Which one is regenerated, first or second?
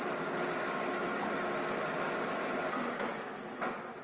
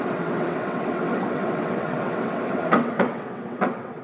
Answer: second